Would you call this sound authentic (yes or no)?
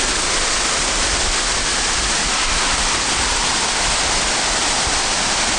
yes